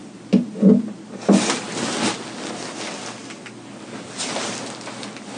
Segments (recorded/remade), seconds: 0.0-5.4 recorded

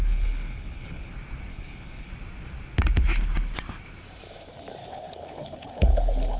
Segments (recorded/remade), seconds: 0.0-1.1 remade; 1.1-1.5 recorded; 1.5-2.1 remade; 2.1-4.8 recorded; 4.8-6.4 remade

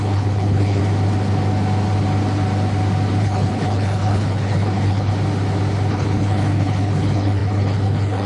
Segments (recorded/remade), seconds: 0.0-0.8 remade; 0.8-3.2 recorded; 3.2-5.1 remade; 5.1-5.9 recorded; 5.9-8.3 remade

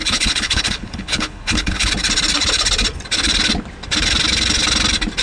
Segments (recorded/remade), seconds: 0.0-1.9 remade; 1.9-5.2 recorded

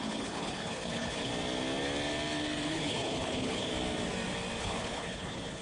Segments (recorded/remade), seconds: 0.0-1.3 remade; 1.3-2.7 recorded; 2.7-3.7 remade; 3.7-4.6 recorded; 4.6-5.6 remade